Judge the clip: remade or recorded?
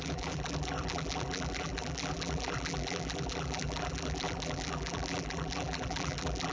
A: remade